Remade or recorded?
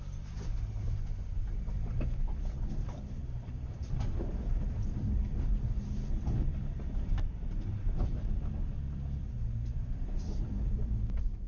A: remade